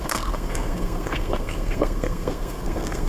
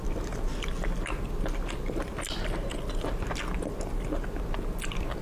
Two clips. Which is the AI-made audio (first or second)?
first